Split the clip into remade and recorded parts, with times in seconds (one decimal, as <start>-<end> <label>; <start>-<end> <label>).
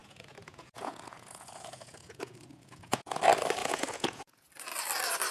0.0-3.2 remade; 3.2-3.6 recorded; 3.6-4.5 remade; 4.5-5.3 recorded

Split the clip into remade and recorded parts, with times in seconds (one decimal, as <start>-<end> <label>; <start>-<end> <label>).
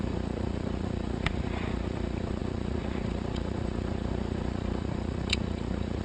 0.0-6.0 remade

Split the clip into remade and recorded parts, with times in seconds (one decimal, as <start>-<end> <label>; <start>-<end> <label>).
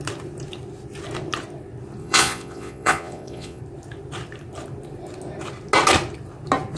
0.0-2.0 recorded; 2.0-3.6 remade; 3.6-6.8 recorded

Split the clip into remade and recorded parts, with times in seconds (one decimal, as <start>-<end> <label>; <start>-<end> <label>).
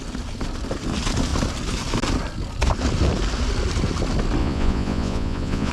0.0-4.4 recorded; 4.4-5.7 remade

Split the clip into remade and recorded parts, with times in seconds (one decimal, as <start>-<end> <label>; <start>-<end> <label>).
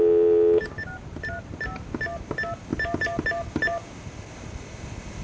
0.0-5.2 recorded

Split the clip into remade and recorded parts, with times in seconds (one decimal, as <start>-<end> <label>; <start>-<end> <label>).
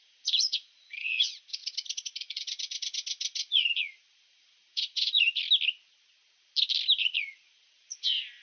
0.0-1.6 remade; 1.6-2.2 recorded; 2.2-5.4 remade; 5.4-7.0 recorded; 7.0-8.4 remade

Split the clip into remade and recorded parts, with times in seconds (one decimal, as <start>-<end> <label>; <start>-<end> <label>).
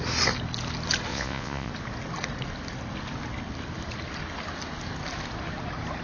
0.0-1.1 recorded; 1.1-1.7 remade; 1.7-6.0 recorded